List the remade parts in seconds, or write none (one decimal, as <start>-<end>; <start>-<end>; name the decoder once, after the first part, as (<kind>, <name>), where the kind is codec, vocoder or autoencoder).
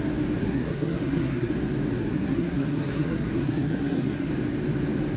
0.4-1.5 (codec, SNAC); 2.0-4.3